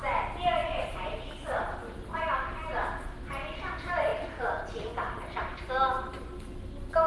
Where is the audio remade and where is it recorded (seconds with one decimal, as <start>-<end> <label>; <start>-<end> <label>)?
0.0-0.6 recorded; 0.6-3.2 remade; 3.2-4.1 recorded; 4.1-6.4 remade; 6.4-7.1 recorded